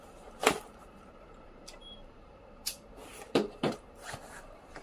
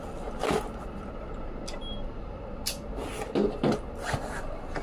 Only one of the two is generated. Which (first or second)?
first